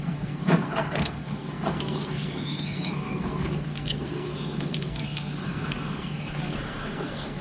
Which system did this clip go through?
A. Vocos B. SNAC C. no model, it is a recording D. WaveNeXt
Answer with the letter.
B